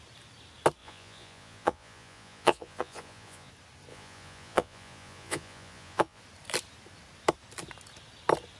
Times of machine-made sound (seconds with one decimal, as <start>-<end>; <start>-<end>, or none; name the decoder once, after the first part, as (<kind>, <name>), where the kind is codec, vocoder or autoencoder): 0.8-3.5 (vocoder, Vocos); 3.9-6.2